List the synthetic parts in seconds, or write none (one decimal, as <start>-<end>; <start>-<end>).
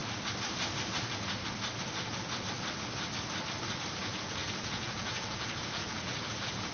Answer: 4.0-6.7